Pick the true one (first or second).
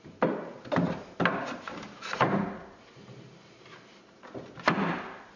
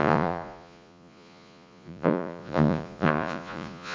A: first